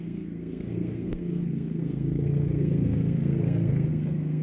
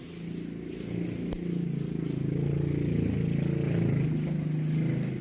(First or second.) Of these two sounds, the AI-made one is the first